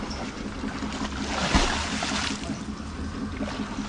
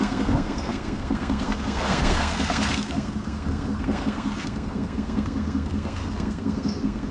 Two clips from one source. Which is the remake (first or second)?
second